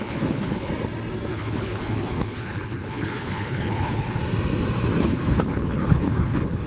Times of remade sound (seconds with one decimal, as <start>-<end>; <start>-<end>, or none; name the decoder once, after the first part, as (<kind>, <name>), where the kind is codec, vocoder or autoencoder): 0.0-0.7 (codec, HILCodec); 1.3-4.2; 5.0-6.7